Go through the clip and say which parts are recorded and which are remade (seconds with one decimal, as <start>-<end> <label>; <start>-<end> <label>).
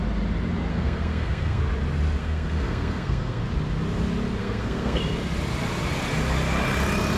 0.0-0.7 recorded; 0.7-1.6 remade; 1.6-2.2 recorded; 2.2-3.4 remade; 3.4-4.4 recorded; 4.4-5.0 remade; 5.0-7.2 recorded